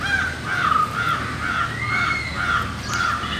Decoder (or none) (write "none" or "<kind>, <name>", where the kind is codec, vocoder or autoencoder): none